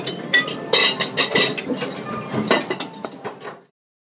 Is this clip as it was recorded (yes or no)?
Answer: yes